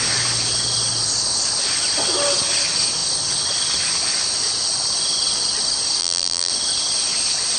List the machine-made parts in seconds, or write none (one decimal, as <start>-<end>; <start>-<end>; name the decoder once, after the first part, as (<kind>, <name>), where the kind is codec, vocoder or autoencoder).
6.0-6.5 (vocoder, BigVGAN v2)